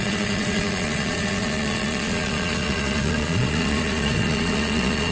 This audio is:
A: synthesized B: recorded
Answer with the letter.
A